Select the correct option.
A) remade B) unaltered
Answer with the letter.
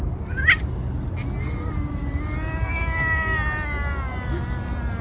B